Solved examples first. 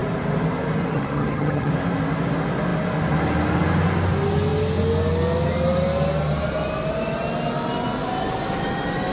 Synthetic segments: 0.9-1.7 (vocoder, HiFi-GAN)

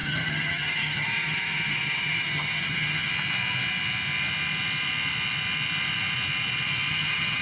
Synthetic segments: 0.0-3.1 (vocoder, HiFi-GAN); 6.9-7.4

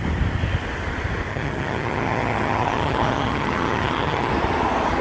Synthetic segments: 1.3-4.3 (vocoder, HiFi-GAN)

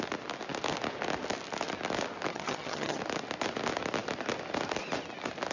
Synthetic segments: 2.3-3.0 (vocoder, HiFi-GAN)